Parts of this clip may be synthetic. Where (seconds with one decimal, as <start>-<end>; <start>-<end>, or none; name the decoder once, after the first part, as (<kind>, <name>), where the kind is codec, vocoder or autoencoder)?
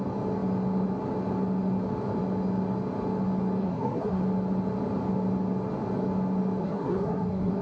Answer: 3.6-4.2 (codec, SNAC); 6.6-7.6